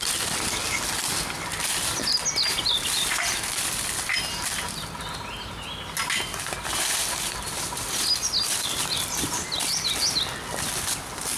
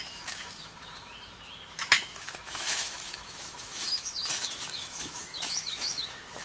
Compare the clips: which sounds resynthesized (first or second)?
second